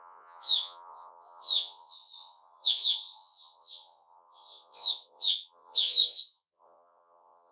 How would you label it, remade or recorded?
remade